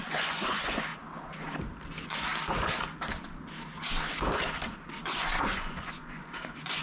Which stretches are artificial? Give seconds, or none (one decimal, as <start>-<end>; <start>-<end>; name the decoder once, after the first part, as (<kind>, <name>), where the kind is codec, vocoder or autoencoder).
0.0-0.9 (vocoder, Vocos); 5.0-6.8